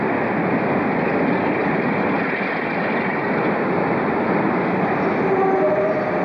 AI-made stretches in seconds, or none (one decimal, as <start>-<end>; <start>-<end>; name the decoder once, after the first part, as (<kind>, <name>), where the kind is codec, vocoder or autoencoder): none